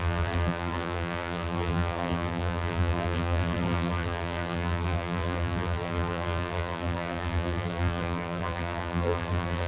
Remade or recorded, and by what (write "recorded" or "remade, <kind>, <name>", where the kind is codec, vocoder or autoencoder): remade, vocoder, BigVGAN v2